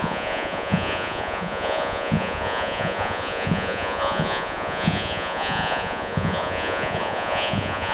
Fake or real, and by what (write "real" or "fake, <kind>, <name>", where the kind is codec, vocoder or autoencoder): fake, vocoder, Vocos